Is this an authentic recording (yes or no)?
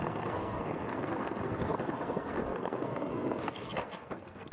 no